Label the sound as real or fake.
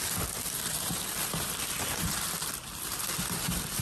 fake